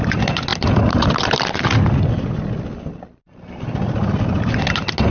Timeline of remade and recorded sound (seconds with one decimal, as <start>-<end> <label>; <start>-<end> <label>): 0.0-5.1 recorded